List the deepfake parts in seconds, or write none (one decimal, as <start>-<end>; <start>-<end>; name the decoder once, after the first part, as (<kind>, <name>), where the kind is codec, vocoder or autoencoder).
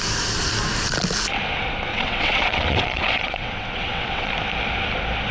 1.9-4.3 (vocoder, WaveNeXt)